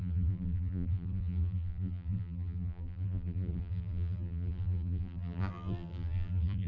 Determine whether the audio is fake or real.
fake